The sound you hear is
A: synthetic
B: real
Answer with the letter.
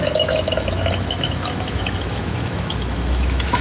A